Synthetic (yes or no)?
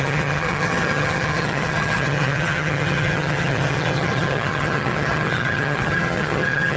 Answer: yes